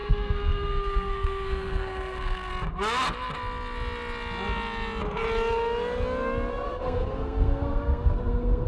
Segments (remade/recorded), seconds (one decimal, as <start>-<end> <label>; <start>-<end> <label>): 0.0-2.5 remade; 2.5-6.5 recorded; 6.5-8.7 remade